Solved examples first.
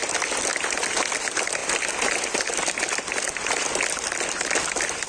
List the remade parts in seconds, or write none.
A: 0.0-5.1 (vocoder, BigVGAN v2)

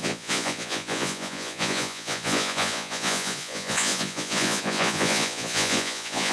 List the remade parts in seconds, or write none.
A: 0.0-6.3 (vocoder, Vocos)

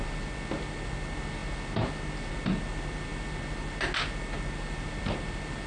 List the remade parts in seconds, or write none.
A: none

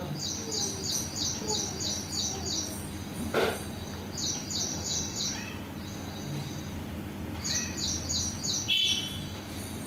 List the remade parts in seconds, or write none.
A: 4.7-5.2 (autoencoder, DAC-VAE)

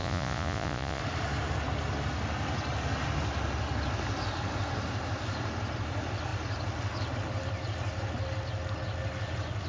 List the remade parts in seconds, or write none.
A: 0.0-1.0 (vocoder, Vocos)

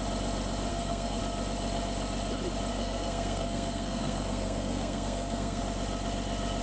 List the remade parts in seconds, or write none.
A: 0.7-1.2 (codec, SNAC); 2.7-5.6